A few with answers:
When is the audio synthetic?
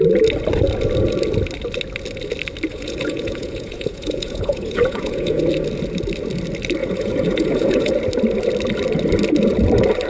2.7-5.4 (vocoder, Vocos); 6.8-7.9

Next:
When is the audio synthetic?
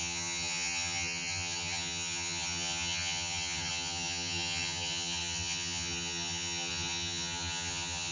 0.0-8.1 (vocoder, HiFi-GAN)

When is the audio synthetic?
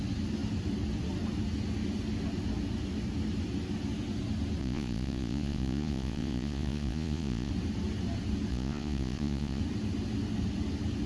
4.6-7.5 (vocoder, Vocos); 8.5-9.6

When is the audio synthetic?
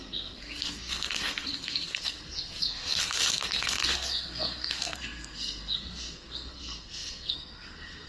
0.0-8.1 (codec, SNAC)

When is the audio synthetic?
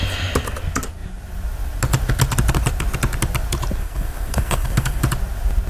3.8-5.0 (codec, SNAC)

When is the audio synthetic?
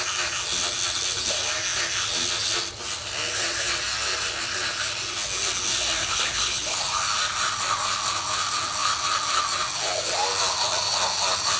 6.0-6.8 (codec, HILCodec)